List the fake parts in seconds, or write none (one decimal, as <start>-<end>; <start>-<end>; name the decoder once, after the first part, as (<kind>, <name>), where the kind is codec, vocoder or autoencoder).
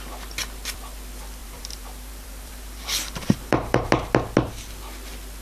1.4-3.9 (vocoder, BigVGAN v2)